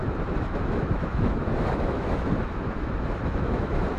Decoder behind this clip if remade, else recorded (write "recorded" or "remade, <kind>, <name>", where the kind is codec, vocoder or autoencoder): remade, autoencoder, DAC-VAE